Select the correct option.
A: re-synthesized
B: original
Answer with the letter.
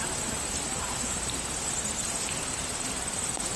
A